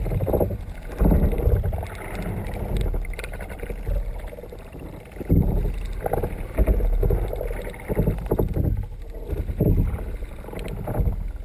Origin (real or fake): real